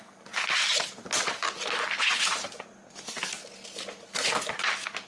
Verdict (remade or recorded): recorded